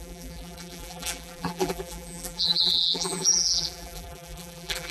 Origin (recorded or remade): remade